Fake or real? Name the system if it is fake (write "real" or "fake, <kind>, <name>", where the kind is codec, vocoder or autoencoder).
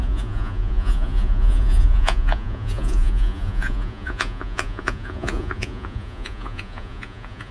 fake, vocoder, Vocos